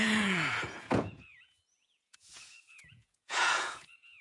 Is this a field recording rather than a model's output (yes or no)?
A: no